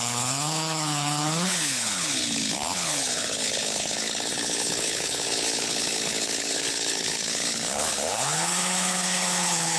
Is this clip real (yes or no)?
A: no